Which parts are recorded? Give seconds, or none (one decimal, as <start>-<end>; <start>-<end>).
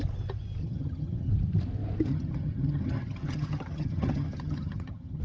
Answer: 0.0-0.6; 1.3-2.1